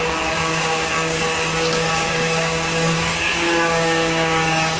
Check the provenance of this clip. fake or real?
fake